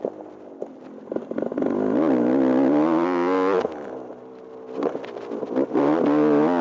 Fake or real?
real